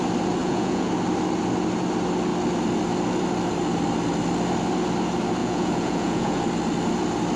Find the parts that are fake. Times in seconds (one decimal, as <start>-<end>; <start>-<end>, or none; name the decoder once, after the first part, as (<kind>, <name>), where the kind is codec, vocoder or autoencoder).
0.4-0.9 (vocoder, Vocos); 5.4-6.4